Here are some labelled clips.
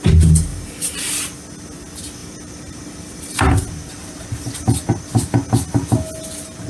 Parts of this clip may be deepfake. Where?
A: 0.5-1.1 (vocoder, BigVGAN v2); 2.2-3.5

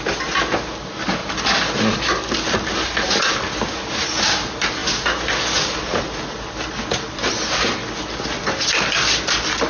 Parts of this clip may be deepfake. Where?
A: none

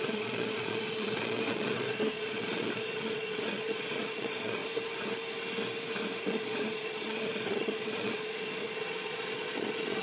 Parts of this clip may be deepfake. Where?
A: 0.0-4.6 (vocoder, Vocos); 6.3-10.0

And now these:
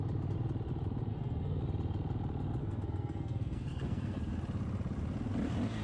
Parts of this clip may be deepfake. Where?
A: 1.1-1.6 (codec, SNAC); 2.6-4.3

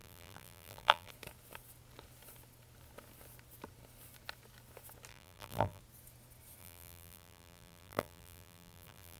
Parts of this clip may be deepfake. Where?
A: 0.0-1.1 (vocoder, BigVGAN v2); 5.1-5.8; 6.6-9.2

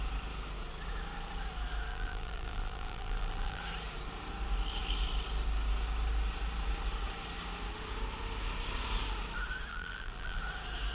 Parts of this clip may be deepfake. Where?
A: 1.9-3.6 (vocoder, BigVGAN v2); 9.7-10.4